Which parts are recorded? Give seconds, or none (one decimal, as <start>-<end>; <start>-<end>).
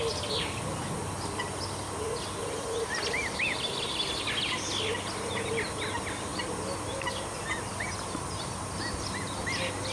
0.0-9.9